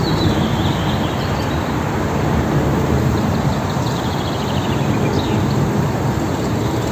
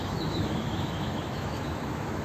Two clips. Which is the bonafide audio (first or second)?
first